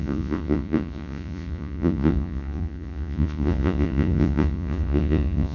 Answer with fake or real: fake